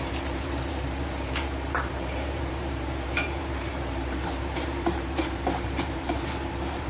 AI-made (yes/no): yes